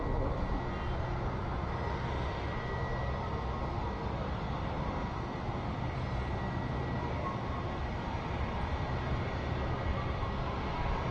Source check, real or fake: real